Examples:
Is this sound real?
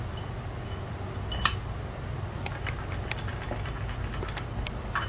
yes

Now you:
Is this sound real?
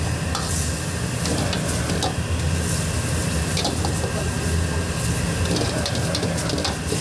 yes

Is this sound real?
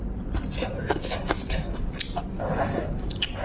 yes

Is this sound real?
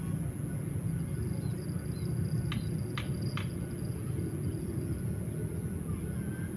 yes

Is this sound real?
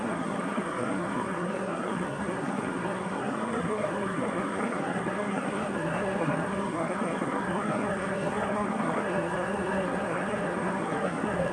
no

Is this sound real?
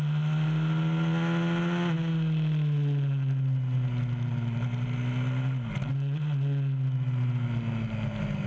yes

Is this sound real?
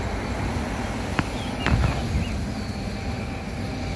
yes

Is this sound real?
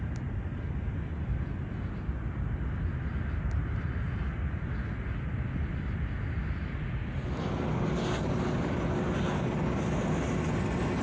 yes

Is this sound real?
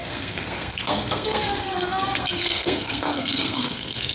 no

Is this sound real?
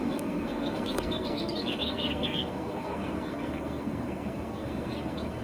no